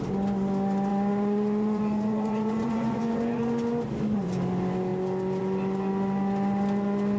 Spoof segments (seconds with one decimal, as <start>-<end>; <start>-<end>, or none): 0.9-3.4

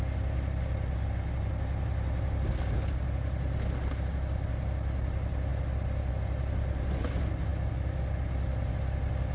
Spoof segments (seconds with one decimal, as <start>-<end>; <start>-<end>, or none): none

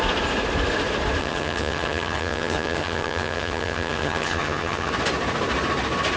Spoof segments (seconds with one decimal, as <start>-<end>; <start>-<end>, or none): 1.2-4.9

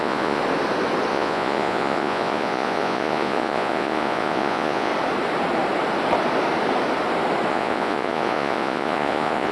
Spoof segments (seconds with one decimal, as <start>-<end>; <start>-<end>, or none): 0.0-0.4; 1.1-4.9; 7.5-9.5

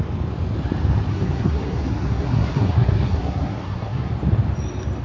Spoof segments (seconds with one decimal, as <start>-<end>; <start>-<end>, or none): 1.1-4.1